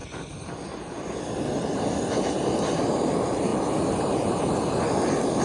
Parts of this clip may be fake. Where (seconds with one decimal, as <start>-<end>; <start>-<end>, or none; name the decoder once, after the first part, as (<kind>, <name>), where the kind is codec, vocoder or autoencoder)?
none